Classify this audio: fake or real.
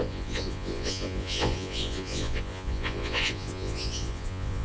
fake